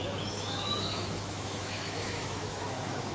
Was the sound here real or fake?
fake